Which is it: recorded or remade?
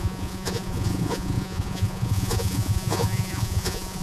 remade